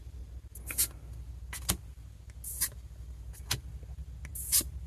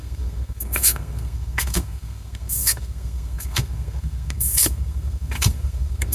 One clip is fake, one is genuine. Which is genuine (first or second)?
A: first